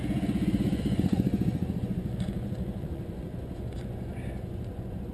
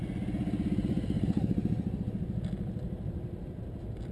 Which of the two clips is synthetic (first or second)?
first